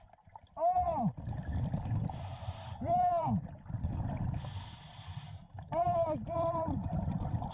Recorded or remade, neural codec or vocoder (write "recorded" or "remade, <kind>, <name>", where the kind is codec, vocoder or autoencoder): recorded